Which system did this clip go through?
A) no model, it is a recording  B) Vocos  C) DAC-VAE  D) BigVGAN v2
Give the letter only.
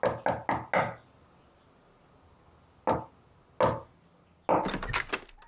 A